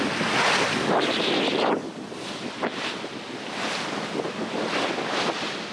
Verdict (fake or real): real